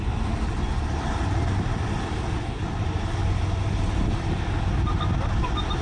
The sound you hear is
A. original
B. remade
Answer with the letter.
A